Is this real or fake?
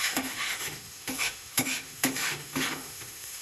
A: fake